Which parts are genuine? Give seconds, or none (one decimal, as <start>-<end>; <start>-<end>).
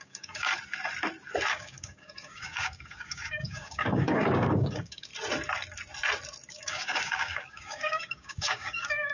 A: 0.5-1.5; 5.1-6.5